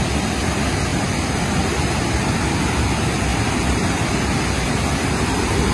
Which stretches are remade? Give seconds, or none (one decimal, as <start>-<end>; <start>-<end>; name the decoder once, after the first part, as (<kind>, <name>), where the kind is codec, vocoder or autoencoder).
none